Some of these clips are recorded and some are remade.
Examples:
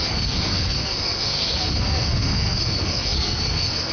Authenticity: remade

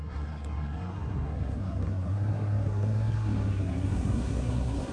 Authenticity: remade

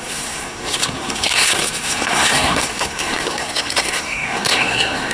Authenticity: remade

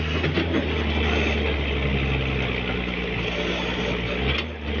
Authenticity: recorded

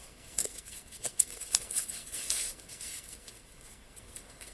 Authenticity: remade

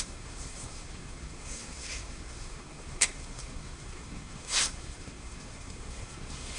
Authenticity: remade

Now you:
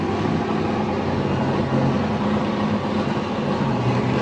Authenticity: recorded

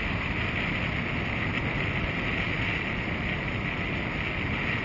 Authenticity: recorded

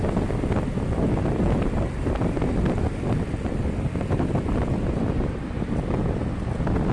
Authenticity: recorded